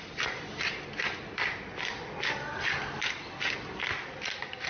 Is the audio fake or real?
real